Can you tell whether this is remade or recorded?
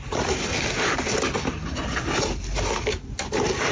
recorded